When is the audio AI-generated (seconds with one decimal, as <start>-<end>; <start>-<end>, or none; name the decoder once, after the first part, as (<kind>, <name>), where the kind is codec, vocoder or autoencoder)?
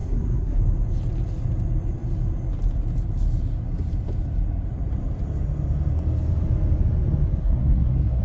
0.0-0.6 (codec, SNAC); 7.4-8.2